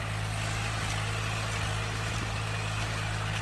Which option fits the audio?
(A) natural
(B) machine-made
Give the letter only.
A